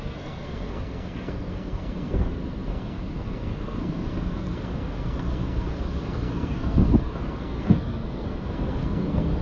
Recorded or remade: remade